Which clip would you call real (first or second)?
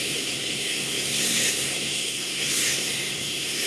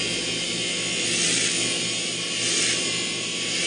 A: second